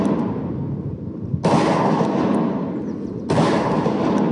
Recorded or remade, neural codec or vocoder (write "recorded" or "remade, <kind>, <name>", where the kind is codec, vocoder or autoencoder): recorded